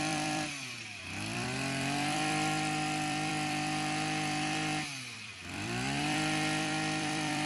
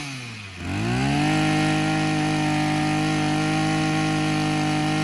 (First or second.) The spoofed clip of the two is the first